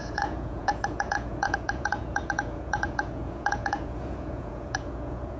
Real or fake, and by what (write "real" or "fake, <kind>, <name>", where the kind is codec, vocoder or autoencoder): fake, vocoder, Vocos